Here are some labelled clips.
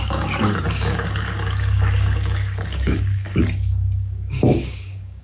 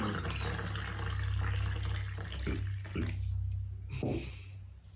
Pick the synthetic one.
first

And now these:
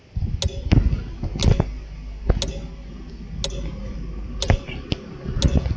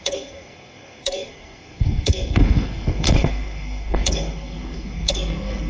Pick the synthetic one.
second